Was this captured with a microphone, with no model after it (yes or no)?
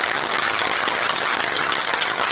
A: no